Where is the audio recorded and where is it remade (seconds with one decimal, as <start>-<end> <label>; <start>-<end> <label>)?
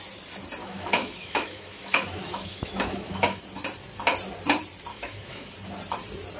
0.0-0.6 recorded; 0.6-3.4 remade; 3.4-4.9 recorded; 4.9-5.5 remade; 5.5-6.4 recorded